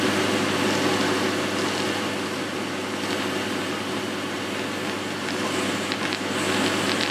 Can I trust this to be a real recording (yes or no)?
yes